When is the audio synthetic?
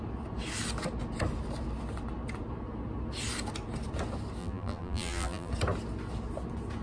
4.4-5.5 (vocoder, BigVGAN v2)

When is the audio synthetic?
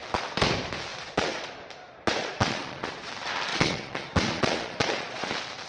0.9-1.5 (vocoder, Vocos); 2.2-3.1; 3.5-5.3